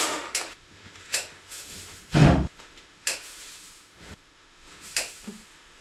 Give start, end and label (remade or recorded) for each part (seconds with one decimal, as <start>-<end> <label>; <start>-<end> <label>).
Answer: 0.0-5.8 remade

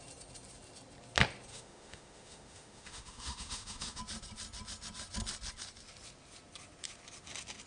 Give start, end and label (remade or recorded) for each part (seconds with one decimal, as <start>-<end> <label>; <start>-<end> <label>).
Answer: 0.0-1.5 recorded; 1.5-4.0 remade; 4.0-7.7 recorded

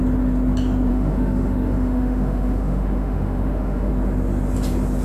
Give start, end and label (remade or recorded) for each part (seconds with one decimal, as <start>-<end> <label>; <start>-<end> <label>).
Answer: 0.0-0.9 recorded; 0.9-3.9 remade; 3.9-5.0 recorded

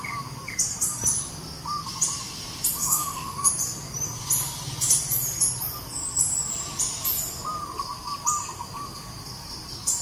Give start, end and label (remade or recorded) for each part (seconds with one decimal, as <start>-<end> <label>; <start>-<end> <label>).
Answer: 0.0-2.8 recorded; 2.8-3.5 remade; 3.5-10.0 recorded

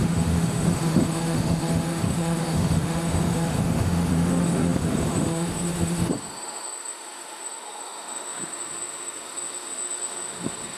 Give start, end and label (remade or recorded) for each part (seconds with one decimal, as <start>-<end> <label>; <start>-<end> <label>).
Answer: 0.0-10.8 remade